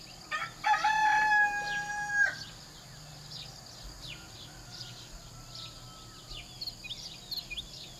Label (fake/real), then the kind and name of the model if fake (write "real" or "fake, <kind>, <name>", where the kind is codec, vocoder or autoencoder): real